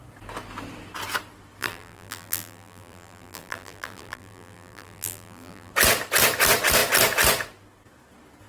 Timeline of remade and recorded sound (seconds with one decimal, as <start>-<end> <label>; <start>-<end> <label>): 0.0-1.6 recorded; 1.6-5.7 remade; 5.7-8.5 recorded